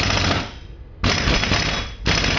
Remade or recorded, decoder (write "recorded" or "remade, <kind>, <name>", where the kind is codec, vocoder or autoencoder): recorded